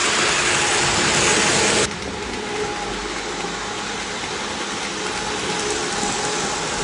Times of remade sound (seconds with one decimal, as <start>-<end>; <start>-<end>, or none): none